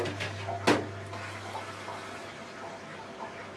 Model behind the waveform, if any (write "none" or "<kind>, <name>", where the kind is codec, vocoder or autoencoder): none